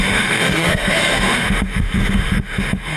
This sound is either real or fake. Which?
fake